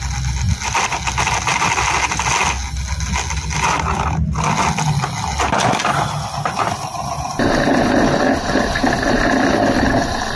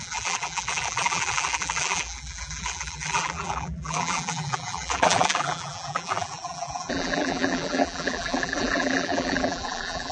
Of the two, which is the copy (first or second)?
second